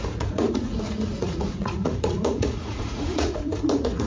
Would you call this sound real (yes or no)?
no